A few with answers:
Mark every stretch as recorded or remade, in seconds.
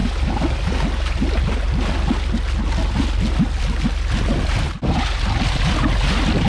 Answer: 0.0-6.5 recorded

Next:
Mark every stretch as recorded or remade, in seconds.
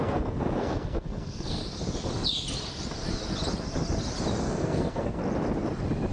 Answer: 0.0-1.6 remade; 1.6-4.4 recorded; 4.4-5.2 remade; 5.2-6.1 recorded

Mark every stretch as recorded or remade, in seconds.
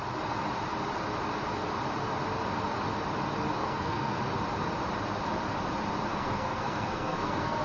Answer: 0.0-3.6 recorded; 3.6-4.2 remade; 4.2-6.1 recorded; 6.1-7.6 remade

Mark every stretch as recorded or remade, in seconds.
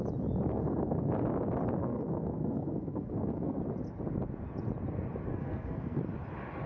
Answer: 0.0-0.5 recorded; 0.5-1.1 remade; 1.1-1.8 recorded; 1.8-3.6 remade; 3.6-5.3 recorded; 5.3-6.0 remade; 6.0-6.7 recorded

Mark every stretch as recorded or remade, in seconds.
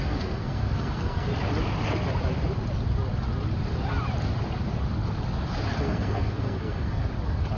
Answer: 0.0-1.3 remade; 1.3-5.8 recorded; 5.8-7.0 remade; 7.0-7.6 recorded